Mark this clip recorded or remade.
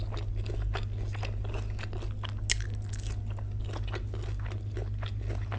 recorded